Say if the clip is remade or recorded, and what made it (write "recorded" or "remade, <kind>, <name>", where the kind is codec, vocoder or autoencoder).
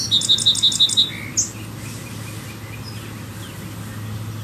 recorded